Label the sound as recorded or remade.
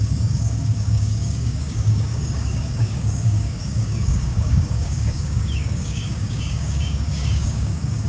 remade